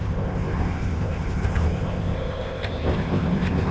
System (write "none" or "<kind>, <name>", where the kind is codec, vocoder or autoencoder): codec, ZipCodec